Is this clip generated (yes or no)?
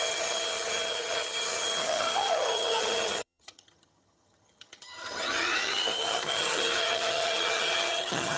yes